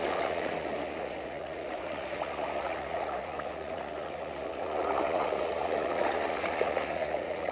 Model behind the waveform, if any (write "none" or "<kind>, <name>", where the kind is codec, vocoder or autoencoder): vocoder, Vocos